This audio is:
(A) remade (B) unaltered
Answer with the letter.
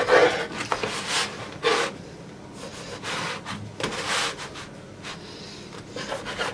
B